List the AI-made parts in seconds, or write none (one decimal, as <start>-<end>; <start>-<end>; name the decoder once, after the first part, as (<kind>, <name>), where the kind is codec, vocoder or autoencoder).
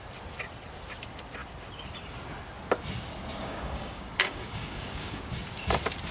3.4-5.3 (codec, DAC)